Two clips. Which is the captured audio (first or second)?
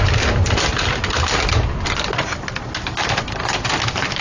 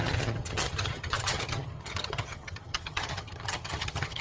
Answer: first